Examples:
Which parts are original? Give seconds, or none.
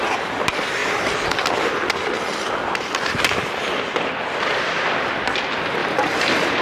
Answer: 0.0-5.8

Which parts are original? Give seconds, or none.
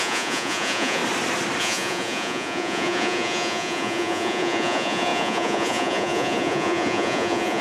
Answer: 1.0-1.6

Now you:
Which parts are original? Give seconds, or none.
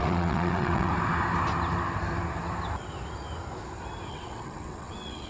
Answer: 0.9-4.1